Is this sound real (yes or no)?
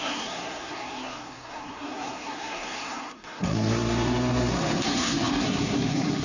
no